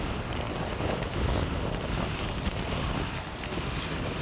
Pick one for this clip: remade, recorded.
recorded